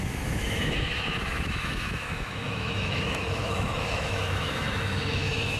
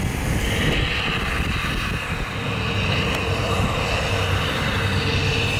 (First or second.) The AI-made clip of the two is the first